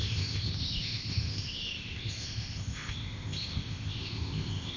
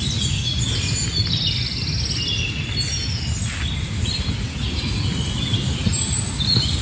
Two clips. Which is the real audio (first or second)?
second